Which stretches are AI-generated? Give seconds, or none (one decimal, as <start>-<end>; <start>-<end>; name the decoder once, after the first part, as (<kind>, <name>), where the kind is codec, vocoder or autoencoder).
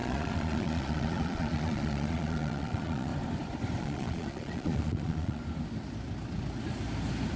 0.0-3.1 (vocoder, Vocos); 3.8-5.4